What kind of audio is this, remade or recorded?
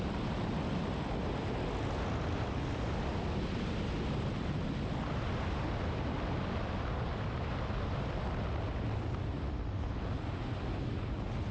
recorded